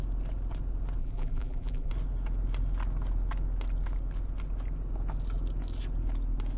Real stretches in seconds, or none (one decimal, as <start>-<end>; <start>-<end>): 0.0-1.0; 1.9-6.6